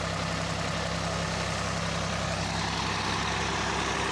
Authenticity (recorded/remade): recorded